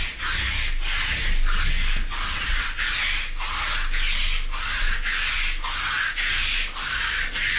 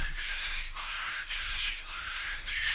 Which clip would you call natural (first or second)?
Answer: first